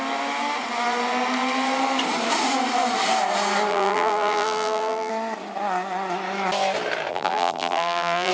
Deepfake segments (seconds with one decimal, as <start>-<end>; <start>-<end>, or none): 3.7-5.1; 7.1-8.3